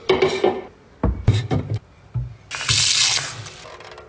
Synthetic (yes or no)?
no